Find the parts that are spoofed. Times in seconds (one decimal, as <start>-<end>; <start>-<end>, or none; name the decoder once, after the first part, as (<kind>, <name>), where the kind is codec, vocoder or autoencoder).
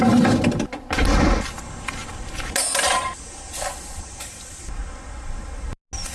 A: none